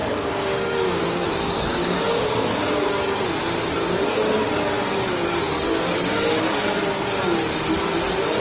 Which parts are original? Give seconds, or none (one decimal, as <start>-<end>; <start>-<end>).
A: 3.3-4.1; 7.2-8.4